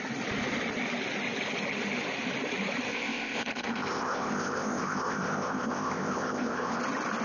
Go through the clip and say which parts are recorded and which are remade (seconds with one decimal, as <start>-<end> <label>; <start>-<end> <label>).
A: 0.0-2.9 recorded; 2.9-6.8 remade; 6.8-7.2 recorded